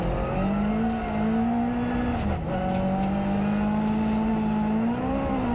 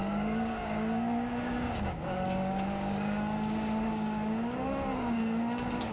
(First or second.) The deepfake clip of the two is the second